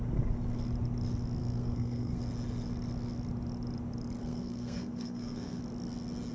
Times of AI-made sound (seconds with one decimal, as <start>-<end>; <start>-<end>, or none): 1.4-2.2; 4.2-5.6